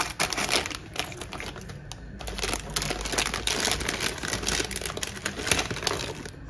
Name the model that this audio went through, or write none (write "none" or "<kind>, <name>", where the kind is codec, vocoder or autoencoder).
none